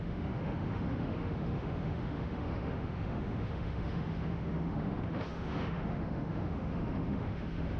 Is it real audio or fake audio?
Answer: fake